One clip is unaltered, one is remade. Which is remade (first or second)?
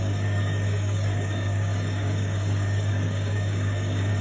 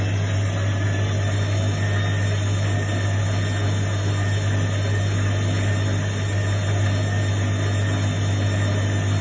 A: first